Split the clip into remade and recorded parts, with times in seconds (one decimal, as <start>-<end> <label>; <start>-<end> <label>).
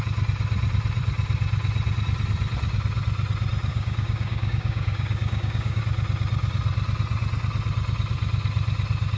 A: 0.0-3.7 recorded; 3.7-5.8 remade; 5.8-9.2 recorded